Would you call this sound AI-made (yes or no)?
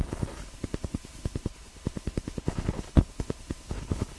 yes